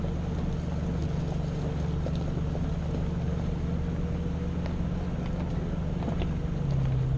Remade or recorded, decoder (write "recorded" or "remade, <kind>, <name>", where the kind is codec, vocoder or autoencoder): recorded